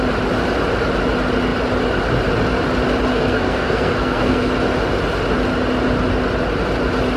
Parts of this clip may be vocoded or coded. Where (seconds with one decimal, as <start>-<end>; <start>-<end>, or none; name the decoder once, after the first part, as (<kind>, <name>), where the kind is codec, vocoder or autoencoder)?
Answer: 3.1-4.5 (codec, SNAC)